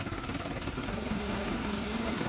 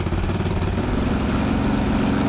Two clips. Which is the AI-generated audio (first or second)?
first